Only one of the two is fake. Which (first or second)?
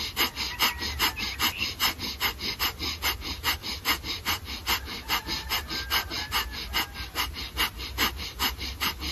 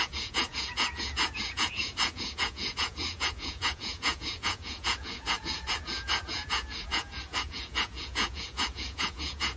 second